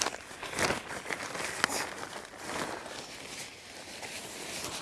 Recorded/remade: recorded